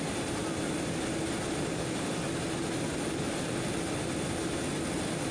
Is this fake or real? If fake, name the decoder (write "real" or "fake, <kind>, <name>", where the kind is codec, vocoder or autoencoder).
real